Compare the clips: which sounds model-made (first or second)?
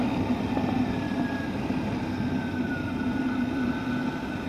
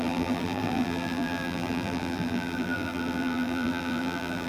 second